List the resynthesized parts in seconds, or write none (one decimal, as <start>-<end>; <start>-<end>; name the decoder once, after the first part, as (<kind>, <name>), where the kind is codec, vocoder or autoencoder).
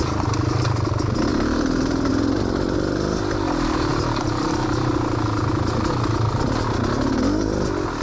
1.3-2.1 (vocoder, BigVGAN v2); 3.9-4.5